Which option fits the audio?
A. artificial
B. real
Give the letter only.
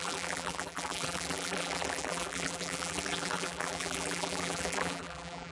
A